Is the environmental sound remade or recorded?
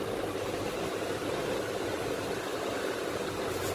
recorded